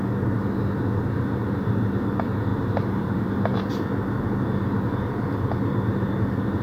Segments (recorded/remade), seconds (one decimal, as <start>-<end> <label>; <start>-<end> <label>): 0.0-2.5 recorded; 2.5-3.7 remade; 3.7-6.6 recorded